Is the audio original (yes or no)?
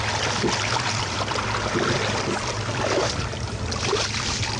yes